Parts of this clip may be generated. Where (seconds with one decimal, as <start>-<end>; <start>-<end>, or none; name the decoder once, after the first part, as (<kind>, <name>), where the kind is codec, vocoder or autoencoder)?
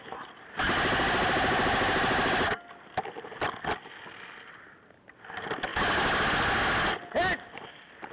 none